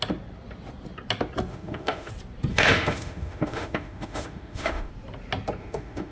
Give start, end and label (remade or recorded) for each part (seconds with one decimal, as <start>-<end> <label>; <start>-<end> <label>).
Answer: 0.0-1.5 recorded; 1.5-2.1 remade; 2.1-2.5 recorded; 2.5-4.9 remade; 4.9-5.6 recorded; 5.6-6.1 remade